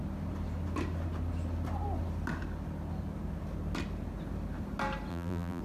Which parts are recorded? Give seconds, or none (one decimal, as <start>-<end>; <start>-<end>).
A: 0.0-5.1